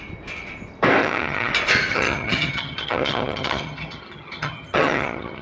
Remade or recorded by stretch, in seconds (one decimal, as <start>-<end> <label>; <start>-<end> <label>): 0.0-1.0 recorded; 1.0-1.5 remade; 1.5-1.9 recorded; 1.9-5.4 remade